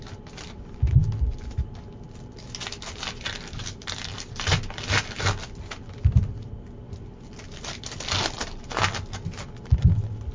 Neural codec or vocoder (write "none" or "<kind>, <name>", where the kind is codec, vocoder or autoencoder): none